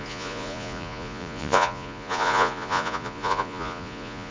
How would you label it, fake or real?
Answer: fake